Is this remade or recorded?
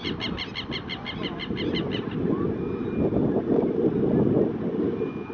recorded